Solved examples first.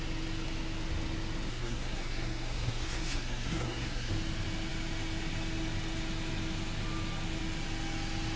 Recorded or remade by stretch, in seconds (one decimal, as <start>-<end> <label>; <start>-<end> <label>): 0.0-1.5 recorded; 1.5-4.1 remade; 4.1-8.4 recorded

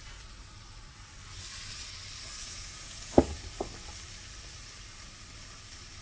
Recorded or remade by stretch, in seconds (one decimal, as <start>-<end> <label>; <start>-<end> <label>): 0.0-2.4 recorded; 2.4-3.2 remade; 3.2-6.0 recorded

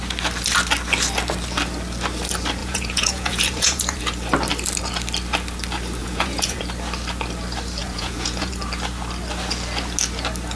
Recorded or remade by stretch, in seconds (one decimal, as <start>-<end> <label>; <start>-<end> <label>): 0.0-2.6 recorded; 2.6-4.0 remade; 4.0-6.0 recorded; 6.0-6.6 remade; 6.6-7.8 recorded; 7.8-8.5 remade; 8.5-10.6 recorded

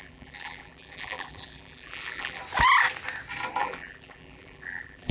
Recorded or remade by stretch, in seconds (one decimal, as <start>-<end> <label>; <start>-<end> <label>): 0.0-2.4 remade; 2.4-3.6 recorded; 3.6-5.1 remade

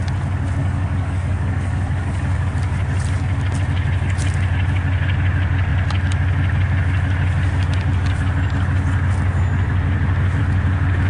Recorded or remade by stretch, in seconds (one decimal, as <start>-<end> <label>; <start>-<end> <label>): 0.0-0.6 recorded; 0.6-2.5 remade; 2.5-11.1 recorded

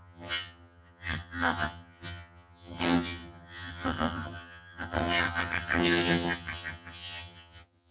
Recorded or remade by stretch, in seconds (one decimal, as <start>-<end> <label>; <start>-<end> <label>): 0.0-7.9 remade

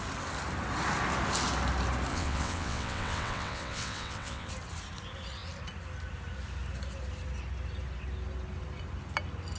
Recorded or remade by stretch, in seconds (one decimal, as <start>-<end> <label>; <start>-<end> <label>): 0.0-2.1 recorded; 2.1-4.5 remade; 4.5-9.6 recorded